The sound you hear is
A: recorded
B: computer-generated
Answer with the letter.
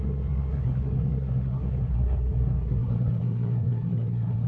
B